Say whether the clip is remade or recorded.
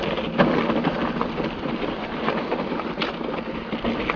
recorded